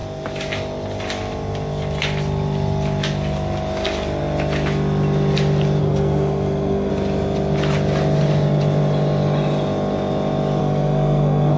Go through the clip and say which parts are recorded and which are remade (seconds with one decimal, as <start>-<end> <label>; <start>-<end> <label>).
0.0-5.8 recorded; 5.8-6.9 remade; 6.9-10.6 recorded; 10.6-11.6 remade